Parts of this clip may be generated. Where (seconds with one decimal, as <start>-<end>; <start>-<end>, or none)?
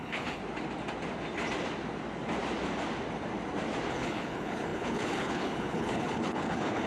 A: 0.0-0.4; 3.9-6.9